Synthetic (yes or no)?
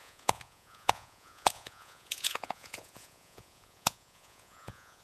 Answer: yes